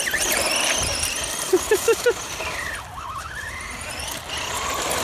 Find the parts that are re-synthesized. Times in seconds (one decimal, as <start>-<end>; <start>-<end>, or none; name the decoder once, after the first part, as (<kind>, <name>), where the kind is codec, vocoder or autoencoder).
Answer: none